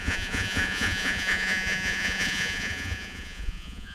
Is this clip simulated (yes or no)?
yes